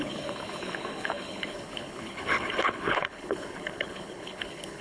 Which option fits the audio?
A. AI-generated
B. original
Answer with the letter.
A